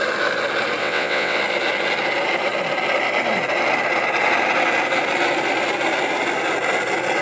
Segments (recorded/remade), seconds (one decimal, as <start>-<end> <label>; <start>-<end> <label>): 0.0-0.8 recorded; 0.8-1.4 remade; 1.4-7.2 recorded